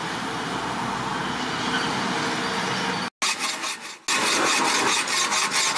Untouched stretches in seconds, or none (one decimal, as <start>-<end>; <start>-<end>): 0.0-5.8